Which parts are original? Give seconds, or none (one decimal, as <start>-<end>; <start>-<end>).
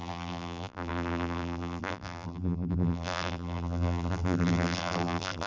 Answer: none